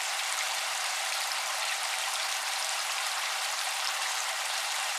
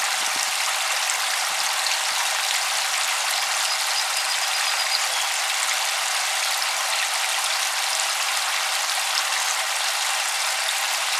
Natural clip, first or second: second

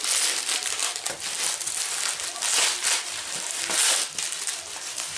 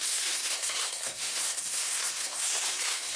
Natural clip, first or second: first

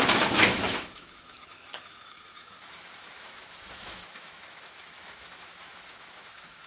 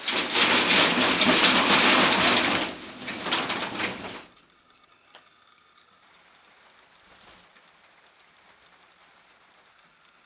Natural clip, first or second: second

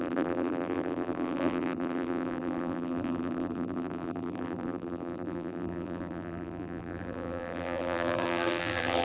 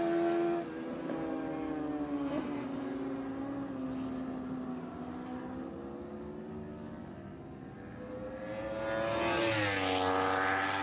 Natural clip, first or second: second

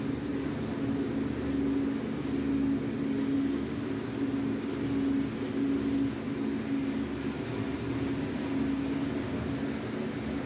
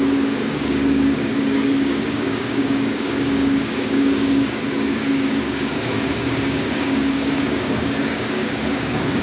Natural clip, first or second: first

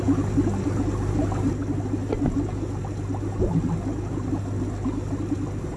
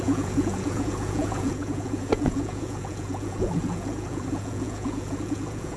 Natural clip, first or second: first